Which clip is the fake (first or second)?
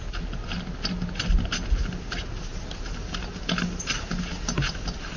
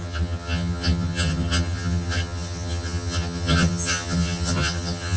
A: second